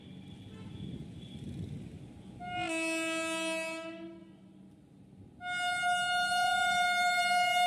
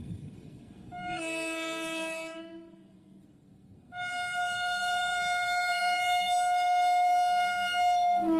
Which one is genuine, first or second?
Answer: first